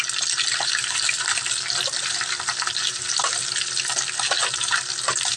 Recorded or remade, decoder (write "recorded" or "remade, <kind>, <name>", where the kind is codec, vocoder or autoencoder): remade, vocoder, BigVGAN v2